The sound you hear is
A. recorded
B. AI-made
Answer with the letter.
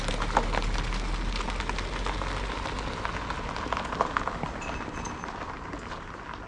A